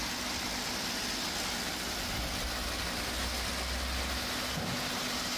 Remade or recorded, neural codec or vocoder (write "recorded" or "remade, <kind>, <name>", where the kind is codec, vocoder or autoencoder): recorded